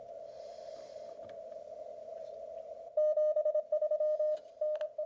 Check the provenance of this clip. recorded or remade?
recorded